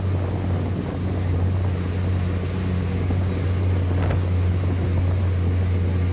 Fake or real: real